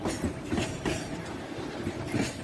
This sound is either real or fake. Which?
real